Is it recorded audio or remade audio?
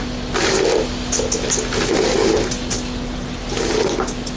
recorded